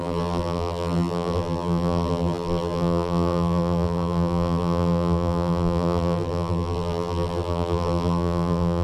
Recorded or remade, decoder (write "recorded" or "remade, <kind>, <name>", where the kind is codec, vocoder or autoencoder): remade, vocoder, BigVGAN v2